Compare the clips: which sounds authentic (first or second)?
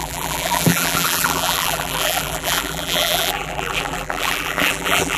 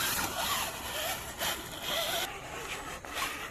second